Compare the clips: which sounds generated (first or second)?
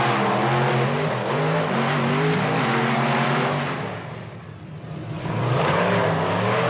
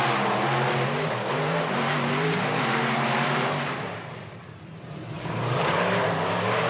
second